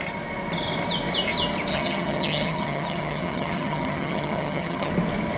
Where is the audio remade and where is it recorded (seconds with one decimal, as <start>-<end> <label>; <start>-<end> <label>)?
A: 0.0-1.7 recorded; 1.7-4.9 remade; 4.9-5.4 recorded